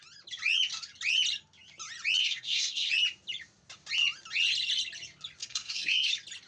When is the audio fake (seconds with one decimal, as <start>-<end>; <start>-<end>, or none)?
2.2-2.9; 5.4-6.1